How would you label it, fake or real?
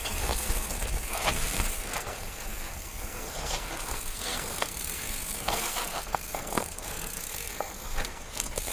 fake